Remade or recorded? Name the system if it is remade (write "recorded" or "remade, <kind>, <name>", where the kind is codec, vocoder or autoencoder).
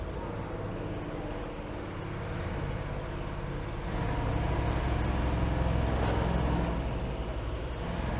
recorded